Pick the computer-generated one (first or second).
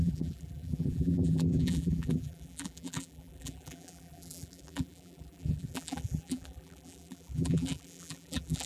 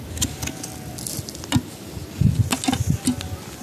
first